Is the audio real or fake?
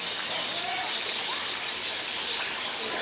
real